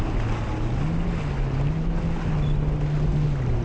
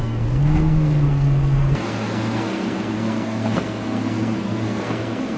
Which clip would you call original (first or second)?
first